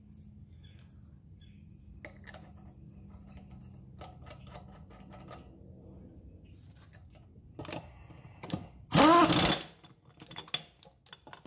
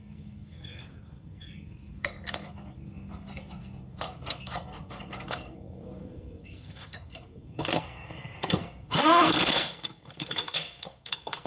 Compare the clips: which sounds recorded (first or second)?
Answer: first